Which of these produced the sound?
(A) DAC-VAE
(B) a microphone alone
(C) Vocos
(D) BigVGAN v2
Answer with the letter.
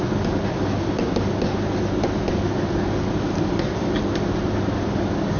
B